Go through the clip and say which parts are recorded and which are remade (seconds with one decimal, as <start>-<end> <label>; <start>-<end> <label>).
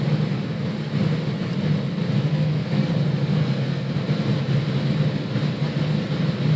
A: 0.0-2.3 recorded; 2.3-2.9 remade; 2.9-3.4 recorded; 3.4-3.9 remade; 3.9-6.6 recorded